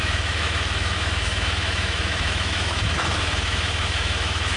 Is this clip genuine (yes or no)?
no